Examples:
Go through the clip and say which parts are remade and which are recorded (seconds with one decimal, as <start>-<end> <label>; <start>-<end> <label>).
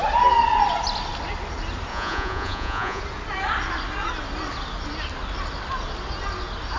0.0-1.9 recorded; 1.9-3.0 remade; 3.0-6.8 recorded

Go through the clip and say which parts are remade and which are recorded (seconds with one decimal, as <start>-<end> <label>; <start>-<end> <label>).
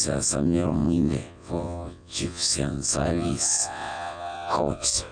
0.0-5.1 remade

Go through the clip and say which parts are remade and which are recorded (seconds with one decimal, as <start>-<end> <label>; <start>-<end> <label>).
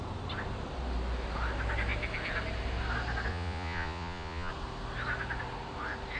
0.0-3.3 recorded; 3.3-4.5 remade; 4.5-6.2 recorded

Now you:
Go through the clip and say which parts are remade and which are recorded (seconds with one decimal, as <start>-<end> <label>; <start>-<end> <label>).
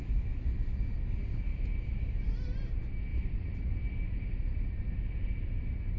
0.0-6.0 recorded